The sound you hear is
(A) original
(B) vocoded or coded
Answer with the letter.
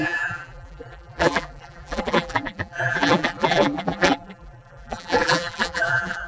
B